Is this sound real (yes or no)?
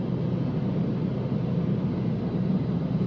yes